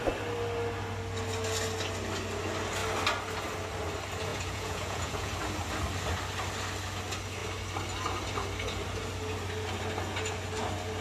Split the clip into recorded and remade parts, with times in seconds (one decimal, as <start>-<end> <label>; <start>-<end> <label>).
0.0-4.3 recorded; 4.3-5.3 remade; 5.3-11.0 recorded